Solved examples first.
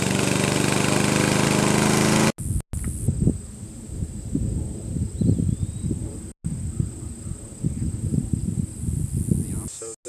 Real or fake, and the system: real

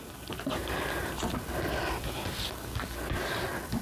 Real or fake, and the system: real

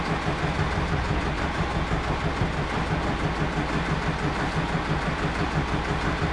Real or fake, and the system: real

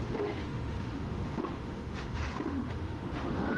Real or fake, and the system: fake, autoencoder, DAC-VAE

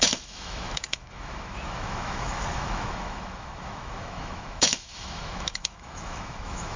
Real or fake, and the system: fake, autoencoder, DAC-VAE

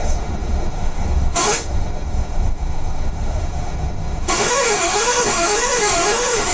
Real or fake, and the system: fake, autoencoder, DAC-VAE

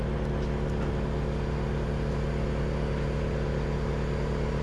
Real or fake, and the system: real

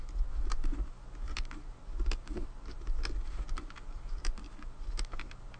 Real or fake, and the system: real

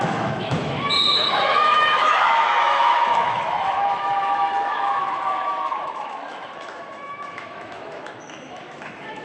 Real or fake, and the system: fake, autoencoder, DAC-VAE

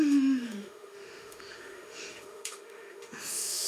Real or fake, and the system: fake, autoencoder, DAC-VAE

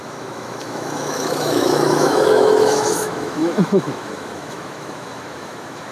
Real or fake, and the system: fake, autoencoder, DAC-VAE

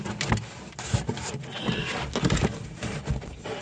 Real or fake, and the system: real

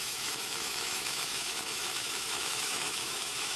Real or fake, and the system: fake, autoencoder, DAC-VAE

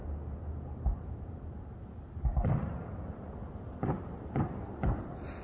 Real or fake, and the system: real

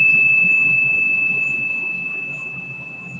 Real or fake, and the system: real